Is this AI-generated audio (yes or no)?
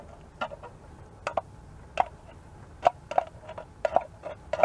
no